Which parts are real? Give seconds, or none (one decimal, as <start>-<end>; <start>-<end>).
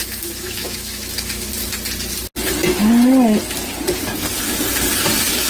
1.5-5.5